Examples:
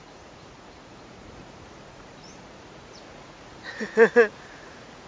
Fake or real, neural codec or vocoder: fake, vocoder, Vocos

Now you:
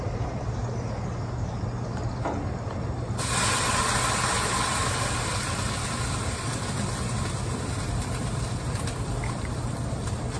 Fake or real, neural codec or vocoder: real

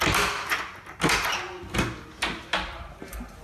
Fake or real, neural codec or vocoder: real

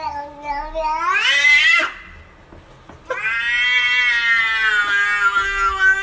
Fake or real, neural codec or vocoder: real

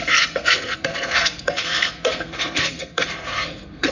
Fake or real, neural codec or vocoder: fake, codec, SNAC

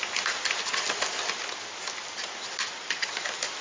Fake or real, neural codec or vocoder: real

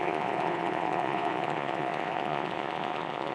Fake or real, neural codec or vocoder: fake, vocoder, Vocos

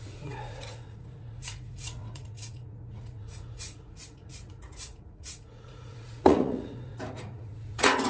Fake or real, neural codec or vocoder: fake, vocoder, Vocos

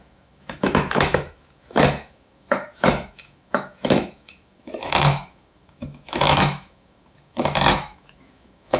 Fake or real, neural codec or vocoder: fake, autoencoder, DAC-VAE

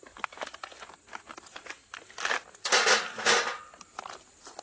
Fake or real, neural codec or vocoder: real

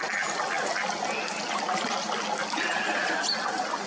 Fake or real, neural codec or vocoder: real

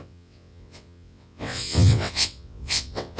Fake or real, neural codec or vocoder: fake, vocoder, WaveNeXt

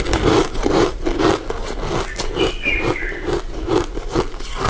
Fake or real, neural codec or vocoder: real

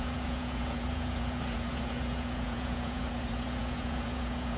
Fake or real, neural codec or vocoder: fake, vocoder, Vocos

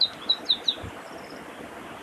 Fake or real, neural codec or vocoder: real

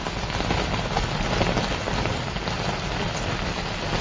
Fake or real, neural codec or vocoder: real